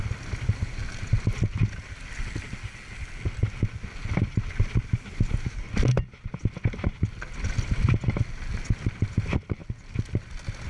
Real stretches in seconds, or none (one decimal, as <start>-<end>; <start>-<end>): 0.0-10.7